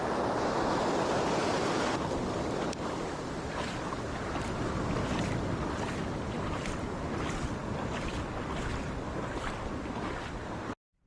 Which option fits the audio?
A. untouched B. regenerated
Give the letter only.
A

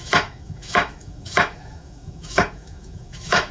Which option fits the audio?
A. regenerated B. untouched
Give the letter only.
A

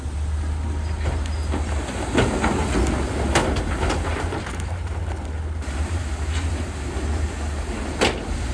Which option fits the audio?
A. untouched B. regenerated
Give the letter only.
A